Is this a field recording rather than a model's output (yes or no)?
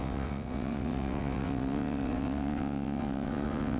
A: no